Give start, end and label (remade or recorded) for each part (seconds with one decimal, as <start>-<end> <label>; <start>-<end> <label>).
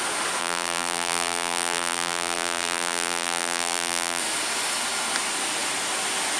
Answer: 0.0-0.4 recorded; 0.4-4.2 remade; 4.2-6.4 recorded